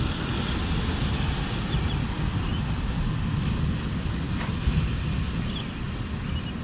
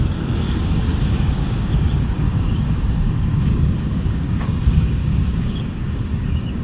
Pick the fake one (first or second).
second